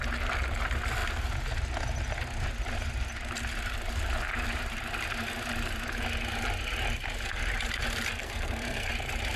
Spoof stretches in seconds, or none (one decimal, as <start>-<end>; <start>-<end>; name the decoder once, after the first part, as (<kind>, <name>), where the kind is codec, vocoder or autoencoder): 8.2-8.9 (codec, SNAC)

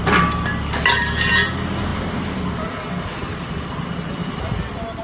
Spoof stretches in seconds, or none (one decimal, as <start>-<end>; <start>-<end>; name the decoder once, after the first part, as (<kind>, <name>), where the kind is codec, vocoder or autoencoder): none